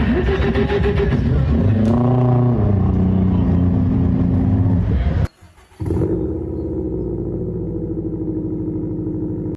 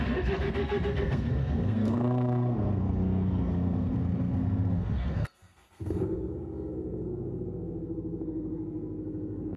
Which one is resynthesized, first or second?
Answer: second